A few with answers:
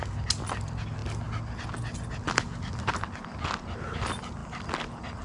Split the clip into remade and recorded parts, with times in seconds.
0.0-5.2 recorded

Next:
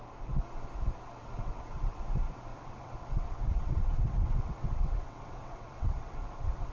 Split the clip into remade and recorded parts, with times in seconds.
0.0-1.2 recorded; 1.2-2.0 remade; 2.0-2.5 recorded; 2.5-6.7 remade

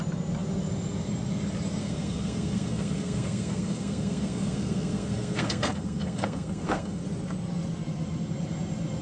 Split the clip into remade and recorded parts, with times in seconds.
0.0-1.8 recorded; 1.8-7.0 remade; 7.0-9.0 recorded

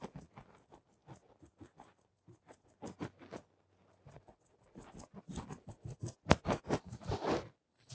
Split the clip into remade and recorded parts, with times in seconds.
0.0-7.9 recorded